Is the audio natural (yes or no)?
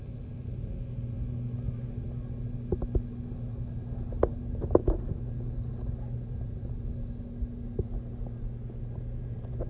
yes